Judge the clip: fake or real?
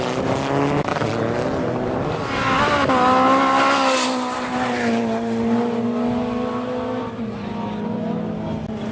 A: real